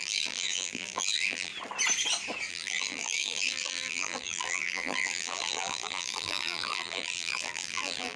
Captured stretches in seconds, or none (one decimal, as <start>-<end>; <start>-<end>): 1.5-2.5